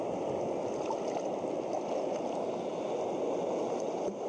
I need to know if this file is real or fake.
real